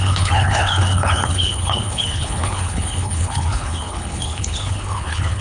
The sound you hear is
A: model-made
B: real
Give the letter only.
A